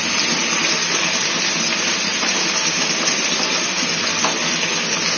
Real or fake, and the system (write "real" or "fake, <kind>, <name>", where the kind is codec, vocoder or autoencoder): real